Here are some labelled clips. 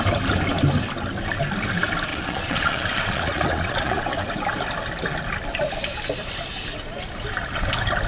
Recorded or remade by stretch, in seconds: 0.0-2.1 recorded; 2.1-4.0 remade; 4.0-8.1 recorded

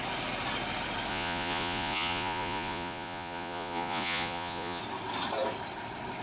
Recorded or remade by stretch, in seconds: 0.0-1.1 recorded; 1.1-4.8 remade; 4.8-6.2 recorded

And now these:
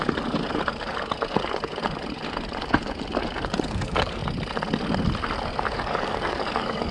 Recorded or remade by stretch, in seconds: 0.0-3.7 recorded; 3.7-4.2 remade; 4.2-5.7 recorded; 5.7-6.9 remade